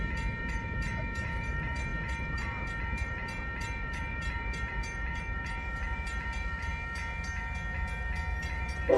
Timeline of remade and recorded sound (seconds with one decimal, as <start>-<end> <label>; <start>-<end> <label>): 0.0-6.7 remade; 6.7-8.4 recorded; 8.4-9.0 remade